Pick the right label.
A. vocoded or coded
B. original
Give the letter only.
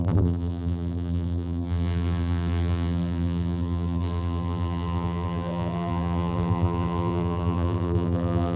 A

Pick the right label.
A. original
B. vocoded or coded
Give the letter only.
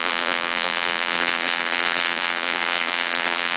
B